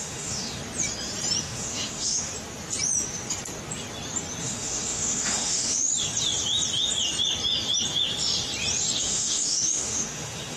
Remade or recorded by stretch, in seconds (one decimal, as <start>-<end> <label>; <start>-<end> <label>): 0.0-0.6 remade; 0.6-1.4 recorded; 1.4-2.3 remade; 2.3-4.4 recorded; 4.4-5.9 remade; 5.9-9.0 recorded; 9.0-10.6 remade